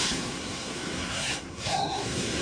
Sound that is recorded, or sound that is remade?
remade